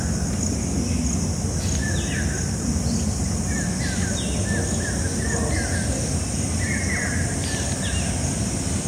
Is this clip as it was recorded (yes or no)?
yes